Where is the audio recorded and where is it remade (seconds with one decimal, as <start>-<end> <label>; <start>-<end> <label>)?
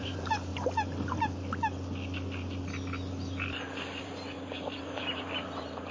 0.0-0.5 remade; 0.5-4.0 recorded; 4.0-5.9 remade